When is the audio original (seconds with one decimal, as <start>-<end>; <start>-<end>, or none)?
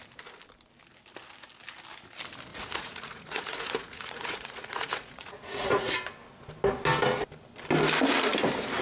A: 0.0-2.5; 5.9-8.8